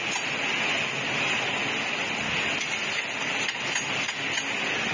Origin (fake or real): real